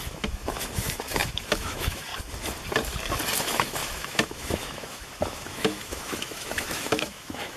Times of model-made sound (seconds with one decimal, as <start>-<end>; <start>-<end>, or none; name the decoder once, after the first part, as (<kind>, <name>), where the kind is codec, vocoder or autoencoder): 0.0-2.1 (autoencoder, DAC-VAE); 3.4-7.6